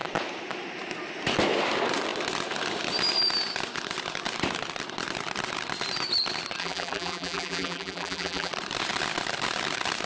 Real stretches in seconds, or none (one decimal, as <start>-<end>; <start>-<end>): 0.0-6.6; 8.5-10.1